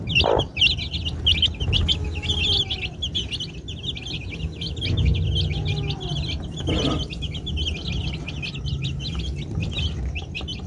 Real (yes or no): yes